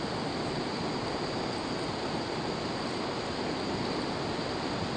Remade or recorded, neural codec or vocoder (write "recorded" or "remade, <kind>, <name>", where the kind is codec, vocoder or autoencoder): recorded